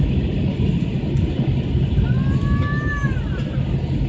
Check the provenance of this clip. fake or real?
real